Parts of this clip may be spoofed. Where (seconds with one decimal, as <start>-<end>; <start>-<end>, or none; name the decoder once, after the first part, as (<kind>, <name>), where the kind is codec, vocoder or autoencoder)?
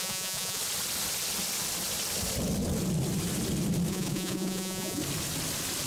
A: 0.0-0.6 (vocoder, Vocos); 3.9-5.0